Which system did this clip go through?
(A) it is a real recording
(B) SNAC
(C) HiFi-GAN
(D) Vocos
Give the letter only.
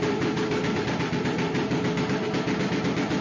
A